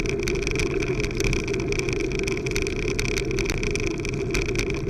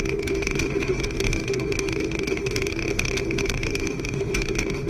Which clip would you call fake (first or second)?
second